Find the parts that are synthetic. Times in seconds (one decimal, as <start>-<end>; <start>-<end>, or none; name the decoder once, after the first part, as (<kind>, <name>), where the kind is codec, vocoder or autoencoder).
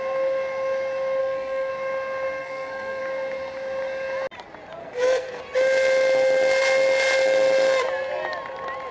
1.2-1.7 (codec, SNAC); 2.4-3.0; 4.8-5.4